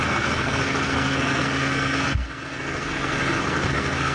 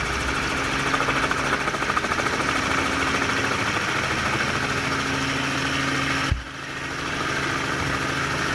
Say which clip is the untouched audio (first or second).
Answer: second